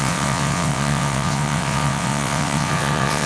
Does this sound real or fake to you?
fake